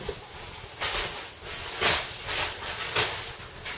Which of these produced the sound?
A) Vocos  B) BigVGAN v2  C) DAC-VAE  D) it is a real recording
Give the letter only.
D